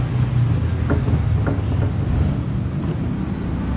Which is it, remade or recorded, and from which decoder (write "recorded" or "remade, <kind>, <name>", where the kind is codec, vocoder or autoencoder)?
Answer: recorded